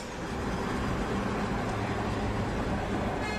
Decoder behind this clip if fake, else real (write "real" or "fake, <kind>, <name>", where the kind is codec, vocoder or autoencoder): real